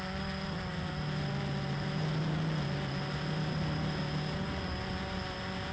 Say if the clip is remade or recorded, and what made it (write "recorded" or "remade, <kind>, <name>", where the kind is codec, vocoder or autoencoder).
recorded